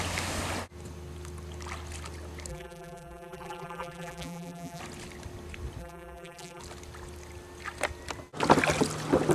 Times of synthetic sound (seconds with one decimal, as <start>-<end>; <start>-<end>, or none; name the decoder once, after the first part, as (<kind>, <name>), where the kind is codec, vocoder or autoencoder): 2.5-4.8 (vocoder, BigVGAN v2); 5.8-6.6